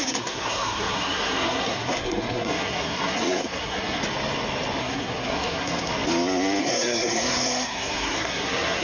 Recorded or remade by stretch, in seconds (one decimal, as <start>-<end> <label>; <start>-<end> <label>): 0.0-4.0 remade; 4.0-4.8 recorded; 4.8-5.9 remade; 5.9-6.6 recorded; 6.6-8.8 remade

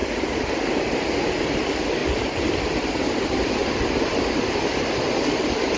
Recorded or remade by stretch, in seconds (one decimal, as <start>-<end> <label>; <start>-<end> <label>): 0.0-1.5 remade; 1.5-2.0 recorded; 2.0-3.0 remade; 3.0-3.6 recorded; 3.6-4.1 remade; 4.1-5.8 recorded

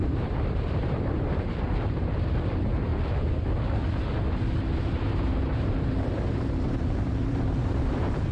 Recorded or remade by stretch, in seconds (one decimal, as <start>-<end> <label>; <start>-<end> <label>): 0.0-2.9 remade; 2.9-4.7 recorded; 4.7-8.3 remade

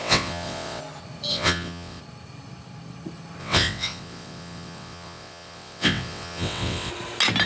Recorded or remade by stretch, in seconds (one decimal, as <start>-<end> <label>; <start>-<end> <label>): 0.0-0.8 remade; 0.8-1.3 recorded; 1.3-2.0 remade; 2.0-3.4 recorded; 3.4-6.9 remade; 6.9-7.5 recorded

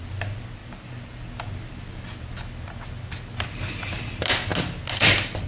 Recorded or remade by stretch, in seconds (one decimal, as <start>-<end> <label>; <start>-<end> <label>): 0.0-5.5 recorded

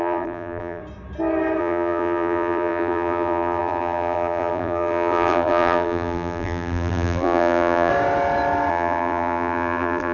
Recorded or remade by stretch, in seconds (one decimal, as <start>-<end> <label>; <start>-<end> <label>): 0.0-0.8 remade; 0.8-1.6 recorded; 1.6-7.9 remade; 7.9-8.7 recorded; 8.7-10.1 remade

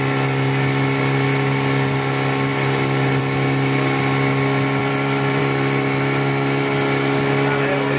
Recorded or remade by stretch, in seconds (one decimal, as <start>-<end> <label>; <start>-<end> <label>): 0.0-4.8 recorded; 4.8-5.4 remade; 5.4-8.0 recorded

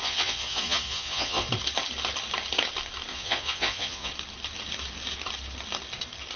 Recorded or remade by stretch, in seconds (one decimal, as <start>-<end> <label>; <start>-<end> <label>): 0.0-1.5 remade; 1.5-3.1 recorded; 3.1-4.1 remade; 4.1-6.4 recorded